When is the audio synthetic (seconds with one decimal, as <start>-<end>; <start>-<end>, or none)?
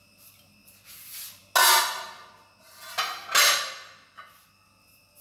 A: none